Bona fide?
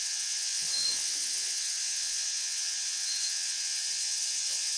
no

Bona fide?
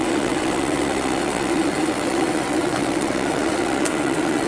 no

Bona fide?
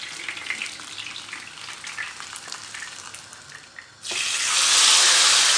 yes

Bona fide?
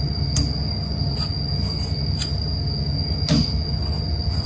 yes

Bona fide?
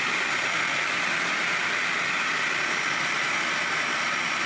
yes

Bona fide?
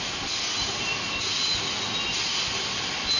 yes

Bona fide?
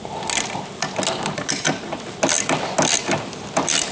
yes